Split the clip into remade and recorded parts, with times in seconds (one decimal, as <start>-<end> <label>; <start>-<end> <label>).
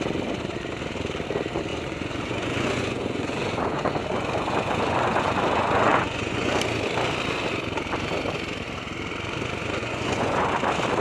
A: 0.0-1.7 recorded; 1.7-6.5 remade; 6.5-9.8 recorded; 9.8-10.5 remade; 10.5-11.0 recorded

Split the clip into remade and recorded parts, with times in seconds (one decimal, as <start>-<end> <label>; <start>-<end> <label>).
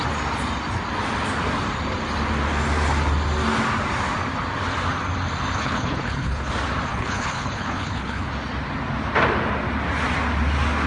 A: 0.0-5.6 recorded; 5.6-6.5 remade; 6.5-6.9 recorded; 6.9-8.3 remade; 8.3-10.9 recorded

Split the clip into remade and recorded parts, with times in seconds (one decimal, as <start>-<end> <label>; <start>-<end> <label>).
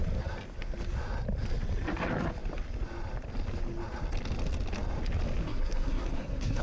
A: 0.0-5.4 recorded; 5.4-6.6 remade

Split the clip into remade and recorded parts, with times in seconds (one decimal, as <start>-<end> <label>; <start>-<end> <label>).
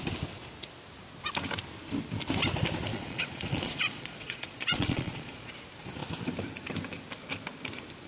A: 0.0-2.9 recorded; 2.9-5.5 remade; 5.5-8.1 recorded